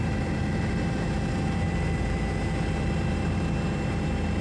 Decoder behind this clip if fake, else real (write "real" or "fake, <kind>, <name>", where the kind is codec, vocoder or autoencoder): fake, vocoder, BigVGAN v2